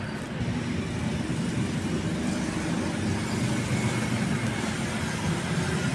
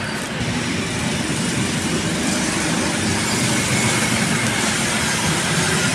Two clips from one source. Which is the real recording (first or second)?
first